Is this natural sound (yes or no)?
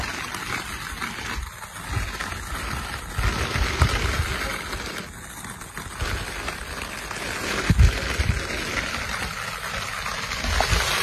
yes